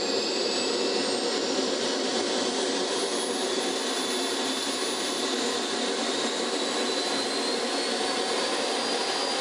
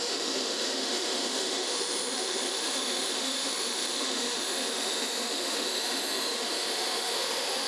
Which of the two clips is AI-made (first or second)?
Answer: second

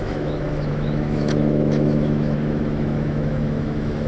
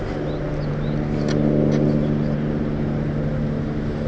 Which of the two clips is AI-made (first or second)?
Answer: first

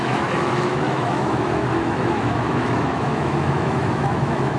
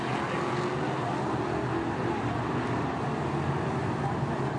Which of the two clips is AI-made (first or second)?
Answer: first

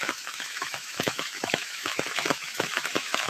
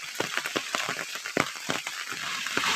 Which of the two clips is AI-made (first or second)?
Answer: first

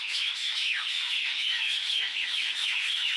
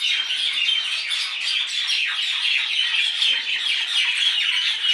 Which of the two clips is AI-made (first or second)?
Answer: first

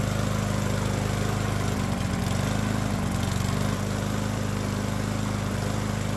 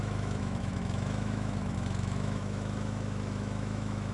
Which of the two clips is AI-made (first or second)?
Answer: second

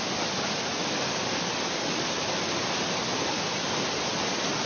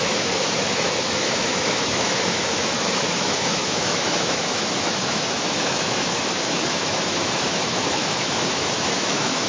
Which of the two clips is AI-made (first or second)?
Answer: second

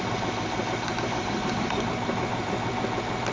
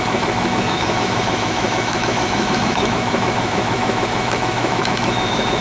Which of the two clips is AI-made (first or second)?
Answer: second